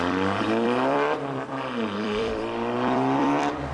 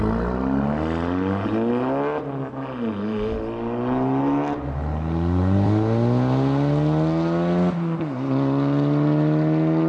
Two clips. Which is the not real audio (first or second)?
first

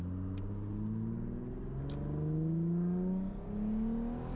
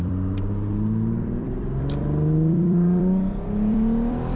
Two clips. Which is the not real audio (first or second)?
second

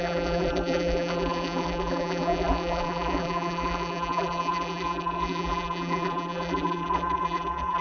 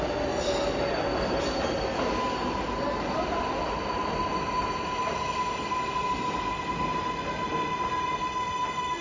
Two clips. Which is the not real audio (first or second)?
first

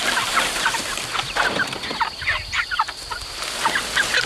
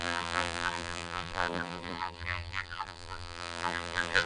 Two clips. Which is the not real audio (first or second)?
second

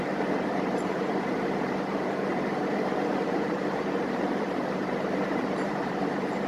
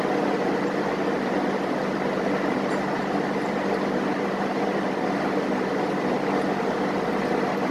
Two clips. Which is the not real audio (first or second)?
first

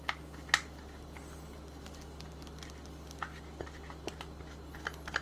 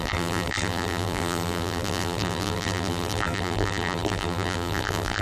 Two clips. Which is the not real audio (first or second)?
second